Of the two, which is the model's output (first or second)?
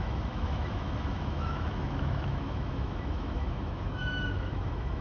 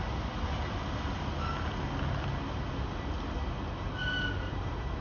first